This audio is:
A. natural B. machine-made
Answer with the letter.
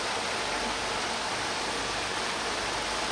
A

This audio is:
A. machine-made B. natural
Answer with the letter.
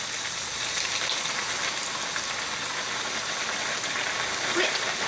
B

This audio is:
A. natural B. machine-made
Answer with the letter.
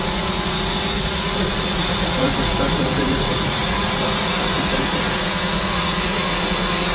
B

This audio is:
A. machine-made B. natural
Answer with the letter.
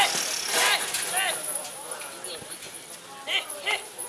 B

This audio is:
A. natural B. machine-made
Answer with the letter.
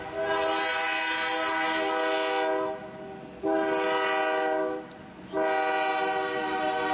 A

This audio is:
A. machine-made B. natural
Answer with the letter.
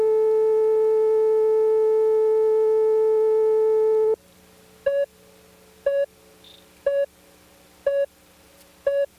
B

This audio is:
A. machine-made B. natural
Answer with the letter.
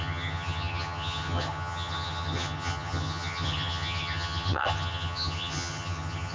A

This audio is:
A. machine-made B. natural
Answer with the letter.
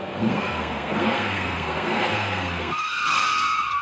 A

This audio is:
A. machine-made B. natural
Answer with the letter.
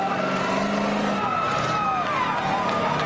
B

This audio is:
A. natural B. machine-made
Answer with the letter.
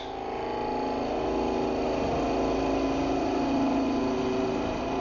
A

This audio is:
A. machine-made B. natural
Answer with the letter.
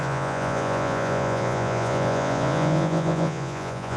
A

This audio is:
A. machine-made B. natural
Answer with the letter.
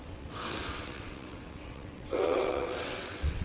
A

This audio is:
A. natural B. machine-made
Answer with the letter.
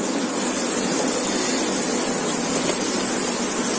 A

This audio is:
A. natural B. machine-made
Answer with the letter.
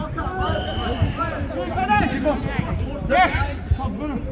A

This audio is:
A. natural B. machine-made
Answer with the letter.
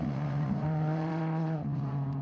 B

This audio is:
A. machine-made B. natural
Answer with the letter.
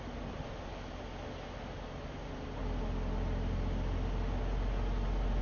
B